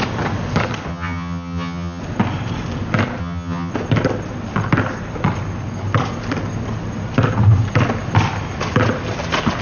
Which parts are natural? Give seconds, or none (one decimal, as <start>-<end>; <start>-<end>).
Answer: 0.0-0.9; 2.0-3.2; 3.7-9.6